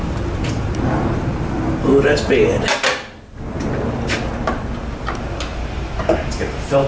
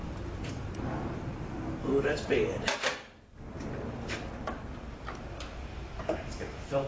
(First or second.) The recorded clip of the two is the first